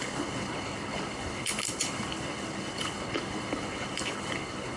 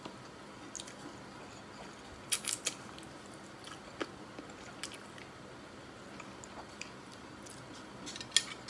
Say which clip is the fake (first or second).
first